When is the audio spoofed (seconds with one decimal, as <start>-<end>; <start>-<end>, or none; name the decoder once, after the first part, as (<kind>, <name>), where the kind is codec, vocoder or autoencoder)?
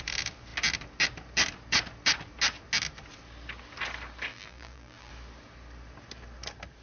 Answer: 4.3-5.1 (vocoder, BigVGAN v2)